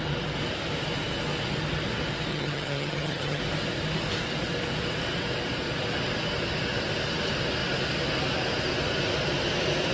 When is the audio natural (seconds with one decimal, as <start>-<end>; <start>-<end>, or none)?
0.0-2.3; 3.4-9.9